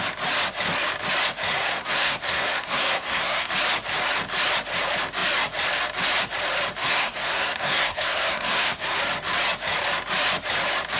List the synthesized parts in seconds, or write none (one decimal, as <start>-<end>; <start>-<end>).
1.5-3.5; 6.8-9.0